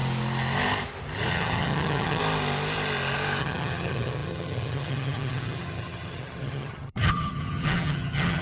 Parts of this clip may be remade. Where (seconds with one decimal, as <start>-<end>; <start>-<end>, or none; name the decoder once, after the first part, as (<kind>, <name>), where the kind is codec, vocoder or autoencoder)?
1.3-2.2 (vocoder, HiFi-GAN); 3.4-8.4